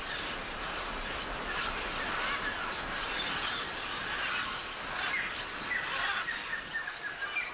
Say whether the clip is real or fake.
real